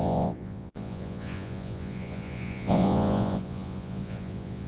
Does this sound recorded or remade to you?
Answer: remade